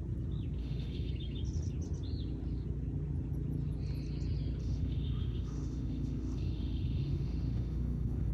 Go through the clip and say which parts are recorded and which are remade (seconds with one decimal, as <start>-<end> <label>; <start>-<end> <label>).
0.0-0.6 recorded; 0.6-1.1 remade; 1.1-4.6 recorded; 4.6-8.3 remade